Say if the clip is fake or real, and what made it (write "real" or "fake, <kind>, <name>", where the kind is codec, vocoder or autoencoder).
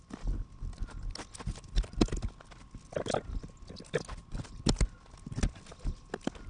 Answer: real